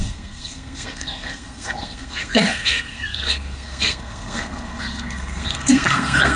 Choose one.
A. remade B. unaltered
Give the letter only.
A